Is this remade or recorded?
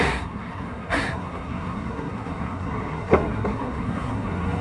remade